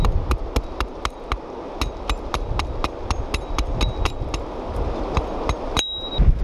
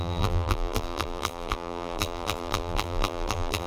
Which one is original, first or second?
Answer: first